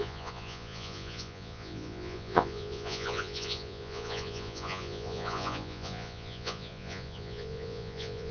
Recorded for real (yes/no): no